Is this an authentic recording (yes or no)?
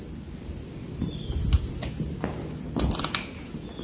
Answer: yes